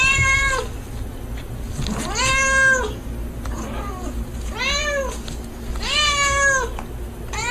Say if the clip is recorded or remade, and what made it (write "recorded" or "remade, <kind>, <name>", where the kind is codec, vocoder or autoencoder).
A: recorded